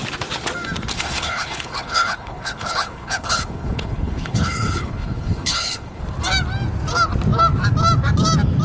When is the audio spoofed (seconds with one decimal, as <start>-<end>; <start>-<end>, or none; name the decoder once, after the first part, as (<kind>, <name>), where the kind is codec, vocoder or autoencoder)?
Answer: 0.9-6.0 (codec, HILCodec)